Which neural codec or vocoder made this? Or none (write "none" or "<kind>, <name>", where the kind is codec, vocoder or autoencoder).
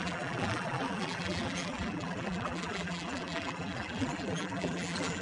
vocoder, BigVGAN v2